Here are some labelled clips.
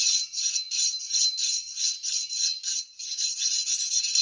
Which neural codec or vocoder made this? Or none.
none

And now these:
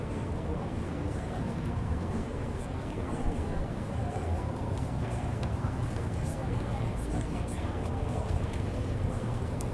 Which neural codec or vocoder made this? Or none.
codec, SNAC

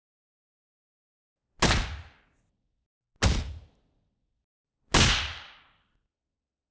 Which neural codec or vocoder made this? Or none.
none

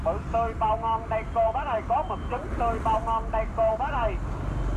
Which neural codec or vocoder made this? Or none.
none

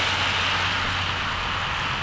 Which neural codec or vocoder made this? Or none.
none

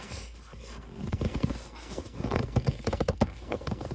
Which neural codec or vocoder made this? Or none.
codec, SNAC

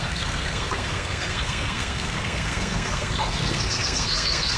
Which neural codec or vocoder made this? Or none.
codec, SNAC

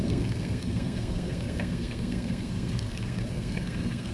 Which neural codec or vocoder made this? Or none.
codec, SNAC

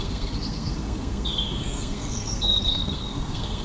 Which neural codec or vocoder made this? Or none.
codec, SNAC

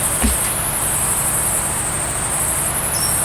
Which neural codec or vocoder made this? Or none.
none